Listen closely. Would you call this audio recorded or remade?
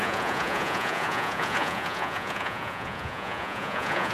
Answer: remade